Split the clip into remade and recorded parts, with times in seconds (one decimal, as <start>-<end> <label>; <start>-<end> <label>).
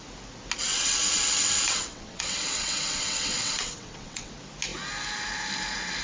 0.0-0.7 recorded; 0.7-4.3 remade; 4.3-6.0 recorded